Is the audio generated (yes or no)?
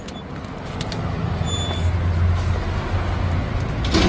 no